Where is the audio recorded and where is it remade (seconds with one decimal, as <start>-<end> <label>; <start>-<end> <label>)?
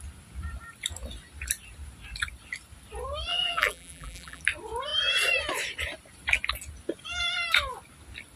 0.0-3.3 recorded; 3.3-4.4 remade; 4.4-8.4 recorded